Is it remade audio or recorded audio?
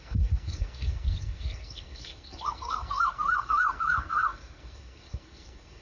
remade